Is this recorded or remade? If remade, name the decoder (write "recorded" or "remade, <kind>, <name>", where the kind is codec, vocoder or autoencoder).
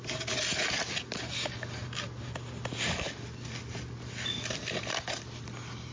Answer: recorded